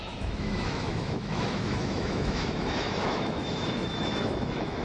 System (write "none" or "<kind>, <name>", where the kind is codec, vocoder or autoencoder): autoencoder, DAC-VAE